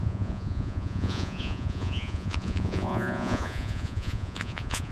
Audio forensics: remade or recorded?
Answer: remade